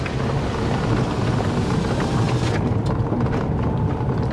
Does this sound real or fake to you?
real